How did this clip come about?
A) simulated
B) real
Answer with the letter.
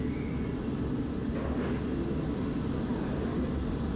B